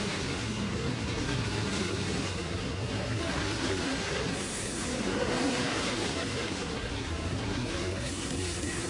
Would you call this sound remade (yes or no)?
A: yes